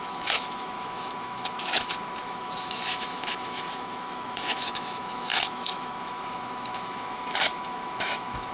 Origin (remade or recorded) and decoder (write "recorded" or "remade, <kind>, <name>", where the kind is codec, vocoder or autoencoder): remade, autoencoder, DAC-VAE